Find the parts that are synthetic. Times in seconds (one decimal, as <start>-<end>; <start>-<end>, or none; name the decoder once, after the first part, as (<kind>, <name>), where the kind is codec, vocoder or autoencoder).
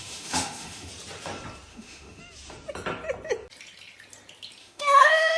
0.0-0.9 (autoencoder, DAC-VAE); 1.7-2.2; 4.6-5.4